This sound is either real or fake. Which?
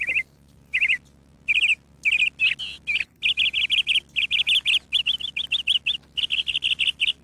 real